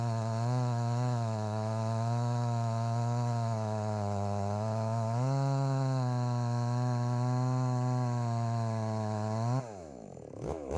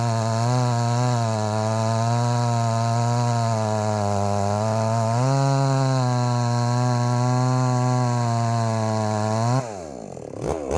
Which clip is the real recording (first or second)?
second